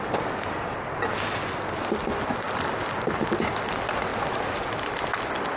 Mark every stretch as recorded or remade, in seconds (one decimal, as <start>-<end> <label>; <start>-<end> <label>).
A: 0.0-5.6 recorded